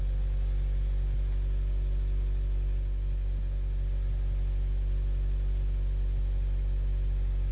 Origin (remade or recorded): recorded